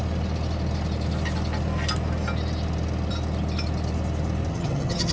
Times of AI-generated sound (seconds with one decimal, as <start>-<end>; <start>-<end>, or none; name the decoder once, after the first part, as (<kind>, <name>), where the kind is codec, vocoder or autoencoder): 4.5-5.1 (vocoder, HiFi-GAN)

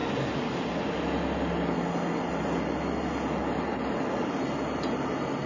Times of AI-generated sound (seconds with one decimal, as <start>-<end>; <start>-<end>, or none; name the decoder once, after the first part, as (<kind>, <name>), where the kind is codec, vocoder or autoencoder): none

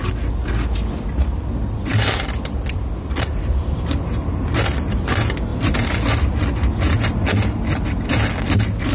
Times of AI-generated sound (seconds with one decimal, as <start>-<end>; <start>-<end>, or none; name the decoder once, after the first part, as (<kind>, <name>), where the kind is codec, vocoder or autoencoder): none